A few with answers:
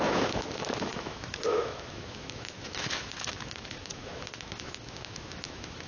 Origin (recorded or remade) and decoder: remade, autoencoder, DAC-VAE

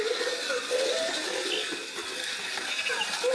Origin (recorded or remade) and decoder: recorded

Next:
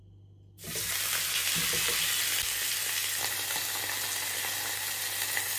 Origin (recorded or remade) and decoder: recorded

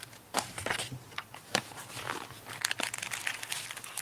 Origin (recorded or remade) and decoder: recorded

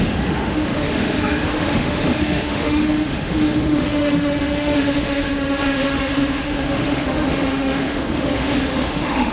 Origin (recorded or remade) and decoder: remade, autoencoder, DAC-VAE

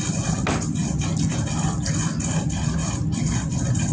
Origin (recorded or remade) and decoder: recorded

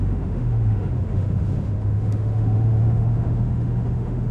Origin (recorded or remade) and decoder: remade, autoencoder, DAC-VAE